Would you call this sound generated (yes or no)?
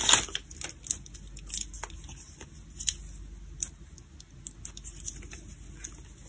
no